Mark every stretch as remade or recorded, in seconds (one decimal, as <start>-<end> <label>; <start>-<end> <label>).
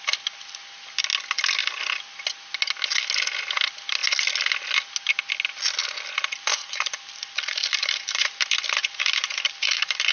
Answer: 0.0-6.5 recorded; 6.5-8.3 remade; 8.3-8.8 recorded; 8.8-10.1 remade